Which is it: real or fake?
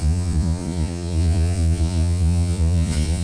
fake